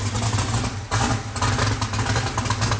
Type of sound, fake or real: real